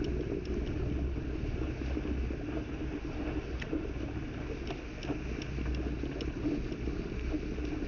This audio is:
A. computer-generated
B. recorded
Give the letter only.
B